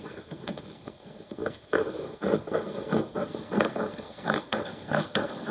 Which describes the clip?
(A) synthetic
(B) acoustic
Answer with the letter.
A